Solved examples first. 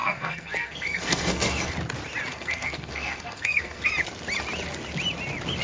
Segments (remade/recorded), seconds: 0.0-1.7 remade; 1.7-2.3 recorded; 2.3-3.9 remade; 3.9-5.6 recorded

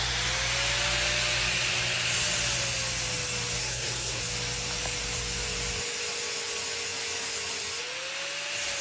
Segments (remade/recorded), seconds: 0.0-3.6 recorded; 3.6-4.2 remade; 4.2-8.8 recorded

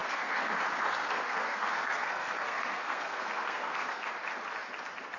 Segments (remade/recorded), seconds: 0.0-0.5 remade; 0.5-1.0 recorded; 1.0-4.1 remade; 4.1-5.2 recorded

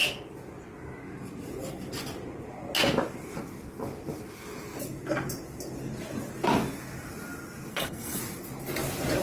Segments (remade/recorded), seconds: 0.0-7.7 recorded; 7.7-8.2 remade; 8.2-9.2 recorded

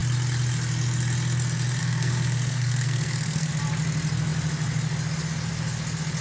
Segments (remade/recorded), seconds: 0.0-1.8 recorded; 1.8-3.5 remade; 3.5-6.2 recorded